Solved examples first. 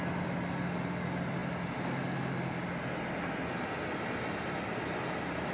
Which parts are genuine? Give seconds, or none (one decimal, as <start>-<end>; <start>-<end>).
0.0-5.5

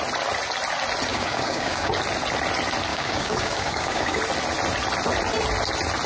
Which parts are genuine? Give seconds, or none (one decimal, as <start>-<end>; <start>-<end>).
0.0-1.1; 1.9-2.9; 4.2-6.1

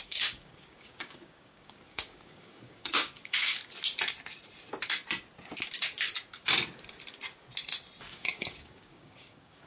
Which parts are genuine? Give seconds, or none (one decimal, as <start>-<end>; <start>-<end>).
3.6-8.0